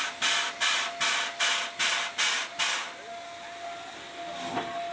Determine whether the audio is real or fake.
real